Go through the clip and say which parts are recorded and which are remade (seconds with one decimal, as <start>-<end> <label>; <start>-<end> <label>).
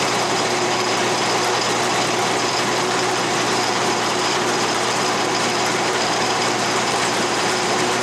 0.0-1.0 remade; 1.0-2.2 recorded; 2.2-8.0 remade